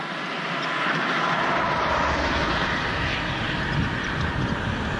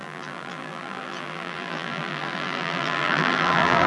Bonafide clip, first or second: first